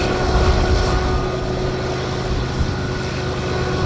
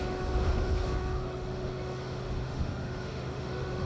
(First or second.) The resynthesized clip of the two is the second